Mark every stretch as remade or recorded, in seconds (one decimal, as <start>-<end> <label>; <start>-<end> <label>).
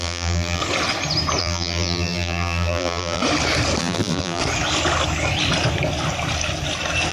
0.0-0.6 remade; 0.6-1.4 recorded; 1.4-3.2 remade; 3.2-3.8 recorded; 3.8-4.4 remade; 4.4-7.1 recorded